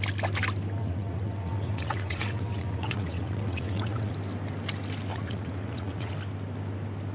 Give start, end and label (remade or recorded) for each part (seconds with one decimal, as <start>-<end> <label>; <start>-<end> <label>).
0.0-0.8 recorded; 0.8-4.1 remade; 4.1-5.1 recorded; 5.1-6.1 remade; 6.1-7.1 recorded